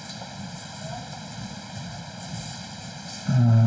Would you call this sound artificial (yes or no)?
no